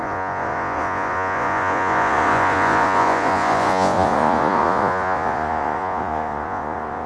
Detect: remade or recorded remade